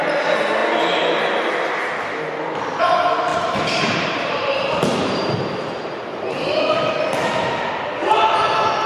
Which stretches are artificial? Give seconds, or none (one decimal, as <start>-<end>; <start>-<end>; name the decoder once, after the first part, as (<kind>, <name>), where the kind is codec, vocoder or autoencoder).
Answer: 3.3-6.7 (vocoder, BigVGAN v2)